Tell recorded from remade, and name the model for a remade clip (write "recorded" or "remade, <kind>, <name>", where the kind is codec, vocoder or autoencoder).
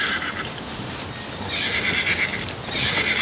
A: recorded